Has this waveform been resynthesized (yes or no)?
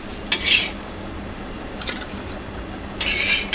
no